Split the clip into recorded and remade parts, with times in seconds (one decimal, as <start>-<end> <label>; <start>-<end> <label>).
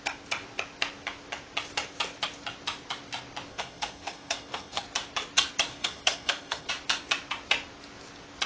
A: 0.0-3.5 recorded; 3.5-4.8 remade; 4.8-5.7 recorded; 5.7-6.7 remade; 6.7-8.5 recorded